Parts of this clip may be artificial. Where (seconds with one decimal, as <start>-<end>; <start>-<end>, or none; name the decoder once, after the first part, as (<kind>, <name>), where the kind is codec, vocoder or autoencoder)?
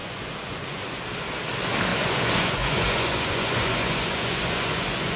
0.0-1.0 (vocoder, Vocos); 1.9-5.2